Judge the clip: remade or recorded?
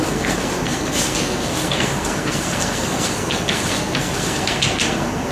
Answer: remade